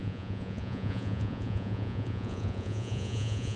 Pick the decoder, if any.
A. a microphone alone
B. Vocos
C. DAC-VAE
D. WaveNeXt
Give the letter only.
B